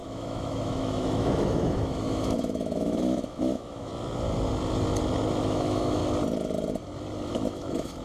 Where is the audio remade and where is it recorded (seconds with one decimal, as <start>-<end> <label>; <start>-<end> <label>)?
0.0-3.9 remade; 3.9-5.4 recorded; 5.4-6.0 remade; 6.0-7.3 recorded; 7.3-8.0 remade